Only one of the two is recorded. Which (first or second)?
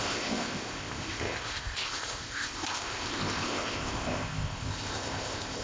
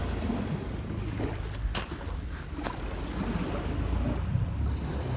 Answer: second